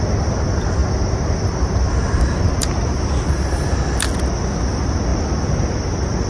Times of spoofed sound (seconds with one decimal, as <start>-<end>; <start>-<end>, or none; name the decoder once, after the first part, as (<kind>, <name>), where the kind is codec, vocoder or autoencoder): none